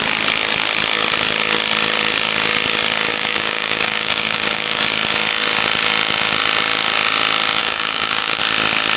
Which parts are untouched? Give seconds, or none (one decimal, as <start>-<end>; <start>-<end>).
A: 0.0-3.1; 4.8-7.6; 8.4-9.0

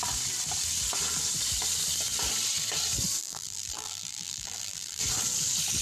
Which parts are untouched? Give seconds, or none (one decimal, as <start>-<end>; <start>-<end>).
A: 0.0-3.2; 5.0-5.8

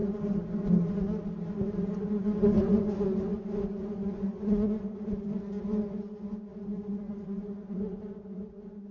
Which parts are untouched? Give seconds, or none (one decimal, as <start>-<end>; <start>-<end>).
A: 0.0-8.9

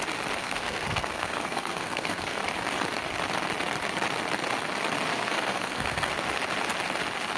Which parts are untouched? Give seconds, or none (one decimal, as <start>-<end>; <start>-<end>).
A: 0.0-0.4; 2.4-5.1; 6.1-7.4